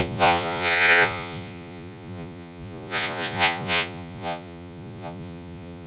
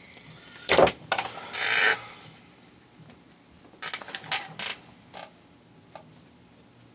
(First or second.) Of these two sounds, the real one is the second